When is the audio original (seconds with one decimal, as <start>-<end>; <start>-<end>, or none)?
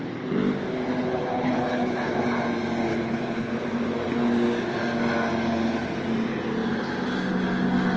0.0-1.0; 2.2-2.9; 3.5-8.0